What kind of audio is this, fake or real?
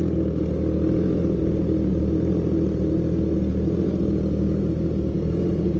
real